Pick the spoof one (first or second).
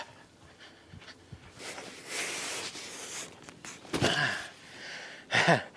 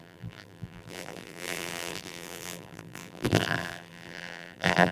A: second